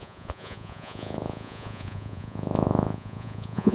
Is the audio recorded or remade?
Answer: remade